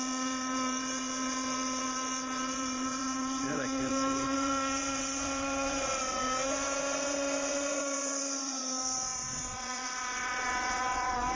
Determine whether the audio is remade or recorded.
remade